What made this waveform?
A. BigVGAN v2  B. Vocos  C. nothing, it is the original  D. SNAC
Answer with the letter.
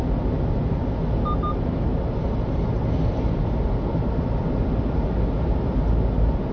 C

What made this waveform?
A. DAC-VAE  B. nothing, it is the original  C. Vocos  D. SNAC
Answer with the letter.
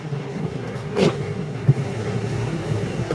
D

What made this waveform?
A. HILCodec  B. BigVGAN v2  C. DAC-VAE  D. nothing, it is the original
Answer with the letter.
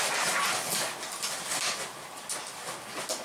D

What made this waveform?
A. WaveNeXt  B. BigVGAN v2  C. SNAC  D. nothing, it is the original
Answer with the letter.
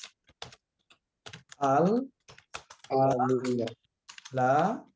D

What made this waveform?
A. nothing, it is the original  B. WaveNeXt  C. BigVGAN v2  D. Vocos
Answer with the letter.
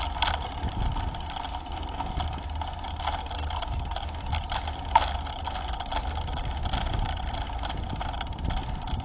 A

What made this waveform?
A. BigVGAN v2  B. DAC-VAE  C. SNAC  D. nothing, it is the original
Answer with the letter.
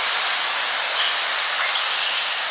D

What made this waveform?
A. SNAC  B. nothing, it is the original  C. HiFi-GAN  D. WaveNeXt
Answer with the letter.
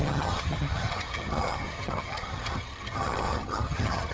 C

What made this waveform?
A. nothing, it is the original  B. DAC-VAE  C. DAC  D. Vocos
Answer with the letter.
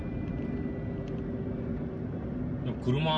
A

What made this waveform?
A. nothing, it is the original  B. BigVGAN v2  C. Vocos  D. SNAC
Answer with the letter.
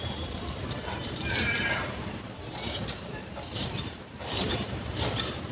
B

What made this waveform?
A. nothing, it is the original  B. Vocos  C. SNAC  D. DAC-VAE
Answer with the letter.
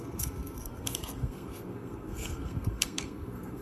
C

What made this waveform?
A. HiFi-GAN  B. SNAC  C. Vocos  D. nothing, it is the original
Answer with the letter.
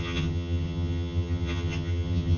A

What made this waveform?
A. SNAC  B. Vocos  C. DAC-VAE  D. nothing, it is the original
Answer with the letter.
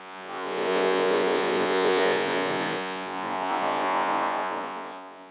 B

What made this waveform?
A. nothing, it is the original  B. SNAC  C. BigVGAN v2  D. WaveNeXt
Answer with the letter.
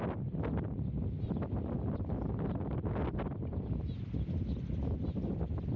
A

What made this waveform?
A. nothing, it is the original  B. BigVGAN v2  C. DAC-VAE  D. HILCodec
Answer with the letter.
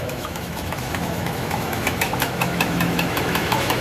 C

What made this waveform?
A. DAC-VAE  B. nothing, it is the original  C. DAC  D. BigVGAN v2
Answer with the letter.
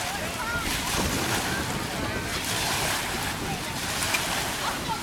B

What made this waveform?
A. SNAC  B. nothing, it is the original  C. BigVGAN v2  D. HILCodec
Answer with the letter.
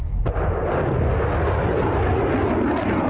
B